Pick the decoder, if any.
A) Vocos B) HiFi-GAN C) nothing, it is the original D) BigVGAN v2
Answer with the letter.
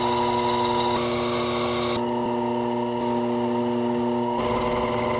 C